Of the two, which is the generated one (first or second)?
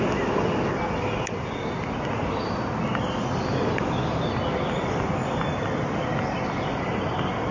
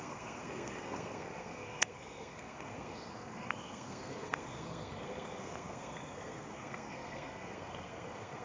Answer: second